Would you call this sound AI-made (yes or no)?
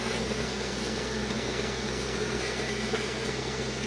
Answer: yes